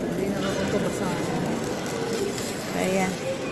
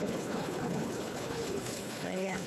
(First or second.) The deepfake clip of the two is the second